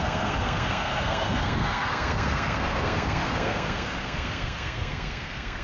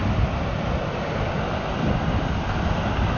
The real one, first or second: second